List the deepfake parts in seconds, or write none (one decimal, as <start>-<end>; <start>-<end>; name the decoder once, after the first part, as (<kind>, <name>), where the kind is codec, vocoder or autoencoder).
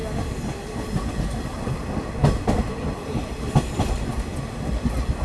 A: none